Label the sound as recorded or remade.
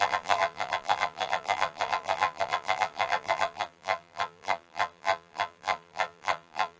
remade